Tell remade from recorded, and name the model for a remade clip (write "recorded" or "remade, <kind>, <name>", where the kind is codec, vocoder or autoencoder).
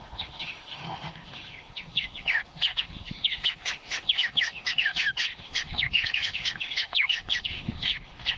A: remade, autoencoder, DAC-VAE